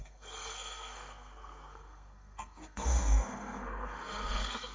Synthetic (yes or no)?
yes